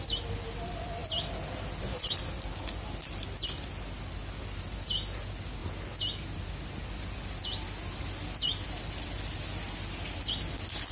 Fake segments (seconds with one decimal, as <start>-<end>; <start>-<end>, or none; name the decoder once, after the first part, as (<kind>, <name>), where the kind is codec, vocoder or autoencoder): none